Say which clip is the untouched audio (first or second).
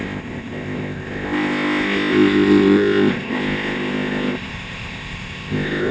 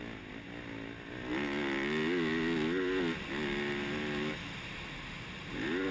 second